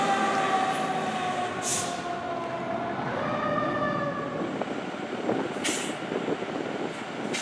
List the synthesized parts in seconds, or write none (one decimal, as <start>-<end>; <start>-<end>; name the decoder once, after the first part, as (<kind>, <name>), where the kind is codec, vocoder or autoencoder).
none